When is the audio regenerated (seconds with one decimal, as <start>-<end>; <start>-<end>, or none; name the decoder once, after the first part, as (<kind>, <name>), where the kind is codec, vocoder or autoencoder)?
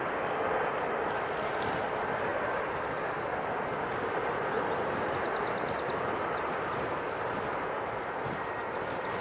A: none